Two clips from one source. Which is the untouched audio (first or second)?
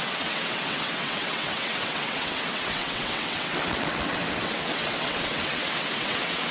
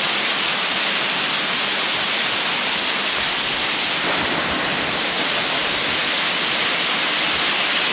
second